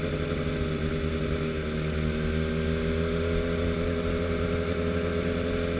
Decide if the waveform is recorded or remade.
recorded